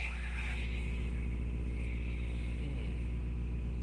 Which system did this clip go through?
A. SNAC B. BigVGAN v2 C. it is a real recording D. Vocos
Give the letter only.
C